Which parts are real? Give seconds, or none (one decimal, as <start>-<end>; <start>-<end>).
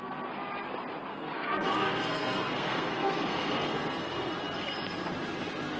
0.0-1.1; 4.3-5.8